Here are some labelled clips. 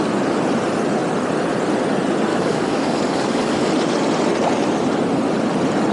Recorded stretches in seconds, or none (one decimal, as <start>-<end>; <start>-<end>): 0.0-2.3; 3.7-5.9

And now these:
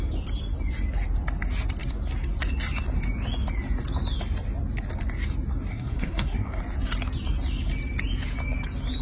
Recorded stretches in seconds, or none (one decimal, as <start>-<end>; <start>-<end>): 0.0-5.7; 6.6-9.0

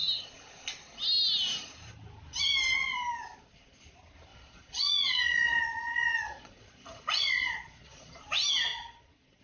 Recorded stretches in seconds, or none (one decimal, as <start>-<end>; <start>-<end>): 0.0-4.3; 8.2-8.7

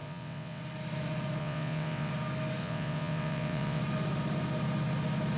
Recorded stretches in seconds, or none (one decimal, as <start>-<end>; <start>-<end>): 0.6-1.4; 2.1-2.6; 3.8-5.4

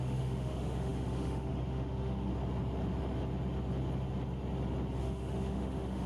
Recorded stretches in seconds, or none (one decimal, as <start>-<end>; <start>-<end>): 2.3-5.0

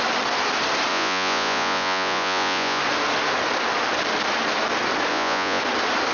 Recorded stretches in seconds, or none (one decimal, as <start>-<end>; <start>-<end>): 0.0-0.9; 2.8-5.1; 5.6-6.1

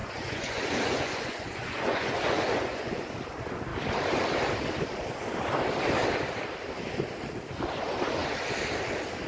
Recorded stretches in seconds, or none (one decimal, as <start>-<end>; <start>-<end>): 3.0-9.3